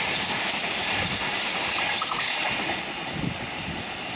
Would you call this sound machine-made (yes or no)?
no